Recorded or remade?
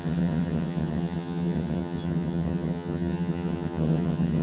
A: remade